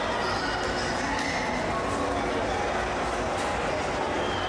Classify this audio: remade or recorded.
recorded